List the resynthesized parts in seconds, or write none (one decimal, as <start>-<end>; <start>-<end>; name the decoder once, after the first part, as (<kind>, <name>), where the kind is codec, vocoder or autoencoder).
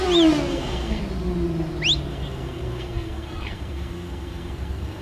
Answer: 0.5-1.0 (codec, SNAC); 2.1-5.0